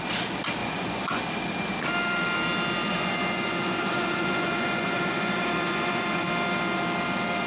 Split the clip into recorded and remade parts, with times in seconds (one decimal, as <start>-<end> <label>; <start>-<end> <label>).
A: 0.0-0.6 recorded; 0.6-1.2 remade; 1.2-2.8 recorded; 2.8-6.3 remade; 6.3-7.5 recorded